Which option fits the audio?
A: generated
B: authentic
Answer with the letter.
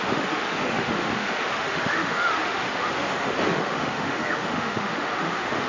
A